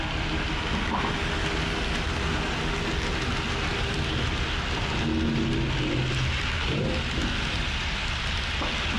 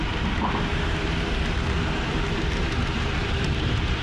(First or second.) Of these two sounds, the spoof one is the second